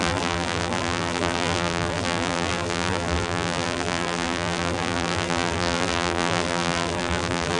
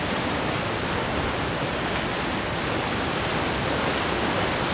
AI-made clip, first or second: first